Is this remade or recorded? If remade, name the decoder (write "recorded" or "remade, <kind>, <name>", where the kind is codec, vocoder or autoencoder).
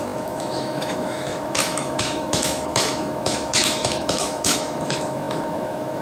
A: remade, autoencoder, DAC-VAE